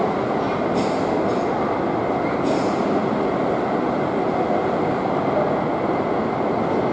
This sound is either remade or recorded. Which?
recorded